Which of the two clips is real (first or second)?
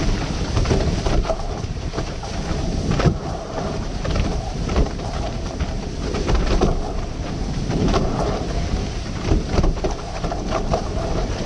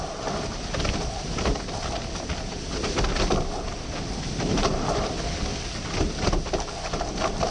second